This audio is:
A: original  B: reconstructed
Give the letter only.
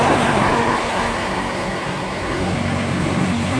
B